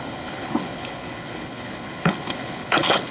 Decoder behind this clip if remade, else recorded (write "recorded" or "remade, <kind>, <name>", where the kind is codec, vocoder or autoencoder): remade, codec, HILCodec